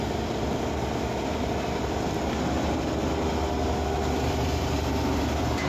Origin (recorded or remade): recorded